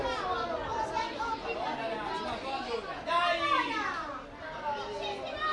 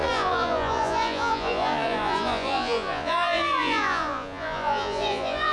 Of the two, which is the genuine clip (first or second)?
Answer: first